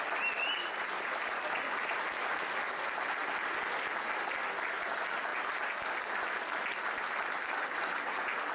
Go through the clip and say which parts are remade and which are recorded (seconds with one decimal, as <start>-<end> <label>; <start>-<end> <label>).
0.0-8.5 recorded